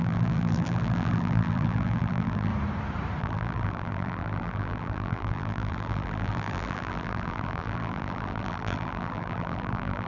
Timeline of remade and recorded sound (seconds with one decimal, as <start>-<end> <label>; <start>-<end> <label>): 0.0-2.5 remade; 2.5-3.2 recorded; 3.2-10.1 remade